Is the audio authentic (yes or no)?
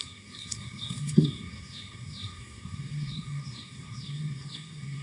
no